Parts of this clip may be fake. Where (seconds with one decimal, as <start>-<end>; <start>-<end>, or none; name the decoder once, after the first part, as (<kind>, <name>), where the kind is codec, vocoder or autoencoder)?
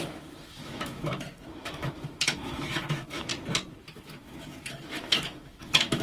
0.0-3.3 (autoencoder, DAC-VAE); 4.0-6.0